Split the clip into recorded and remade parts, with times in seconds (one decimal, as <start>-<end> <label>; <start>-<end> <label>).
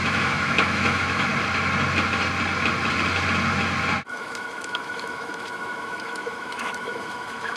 0.0-1.3 remade; 1.3-4.1 recorded; 4.1-7.6 remade